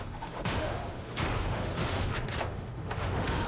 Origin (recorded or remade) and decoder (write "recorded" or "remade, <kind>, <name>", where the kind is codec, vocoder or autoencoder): remade, autoencoder, DAC-VAE